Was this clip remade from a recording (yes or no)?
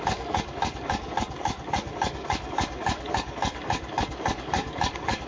yes